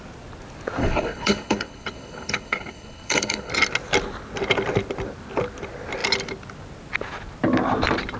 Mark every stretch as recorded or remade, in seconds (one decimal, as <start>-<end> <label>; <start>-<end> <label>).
0.0-0.8 recorded; 0.8-3.5 remade; 3.5-8.2 recorded